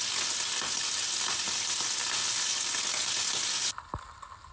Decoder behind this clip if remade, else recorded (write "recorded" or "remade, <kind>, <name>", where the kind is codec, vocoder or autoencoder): recorded